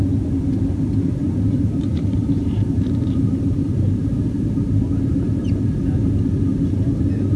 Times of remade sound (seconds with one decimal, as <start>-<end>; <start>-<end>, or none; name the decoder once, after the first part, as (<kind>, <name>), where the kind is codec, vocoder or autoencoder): 1.2-5.6 (vocoder, BigVGAN v2)